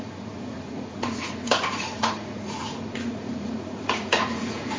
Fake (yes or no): yes